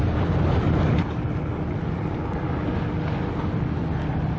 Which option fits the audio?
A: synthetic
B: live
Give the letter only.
B